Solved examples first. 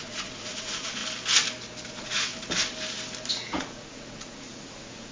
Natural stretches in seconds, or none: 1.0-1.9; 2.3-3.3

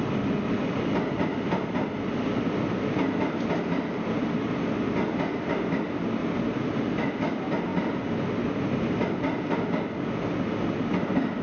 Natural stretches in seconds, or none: 0.0-11.4